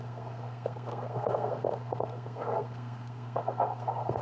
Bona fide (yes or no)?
no